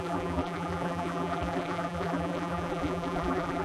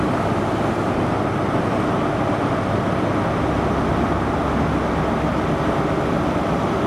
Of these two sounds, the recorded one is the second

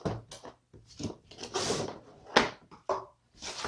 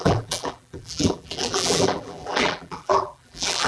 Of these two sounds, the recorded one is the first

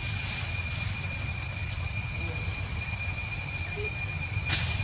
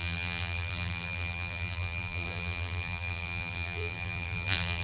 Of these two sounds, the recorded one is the first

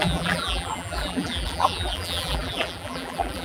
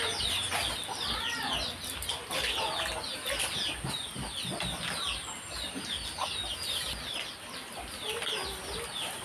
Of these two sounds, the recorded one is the second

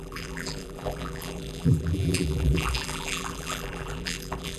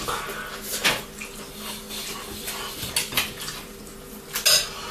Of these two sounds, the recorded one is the second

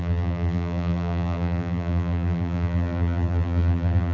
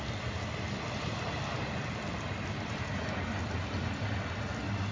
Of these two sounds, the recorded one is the second